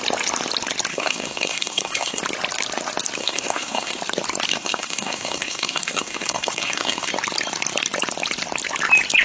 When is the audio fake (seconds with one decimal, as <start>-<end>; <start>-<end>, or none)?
0.9-2.2; 3.2-4.0; 4.5-7.1